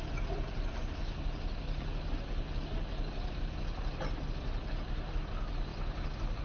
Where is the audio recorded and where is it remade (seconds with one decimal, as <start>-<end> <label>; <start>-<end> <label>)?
0.0-6.4 recorded